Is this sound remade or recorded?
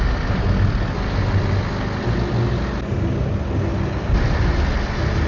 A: recorded